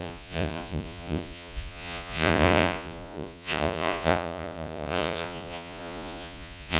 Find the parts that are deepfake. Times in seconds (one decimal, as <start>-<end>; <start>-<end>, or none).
0.0-6.8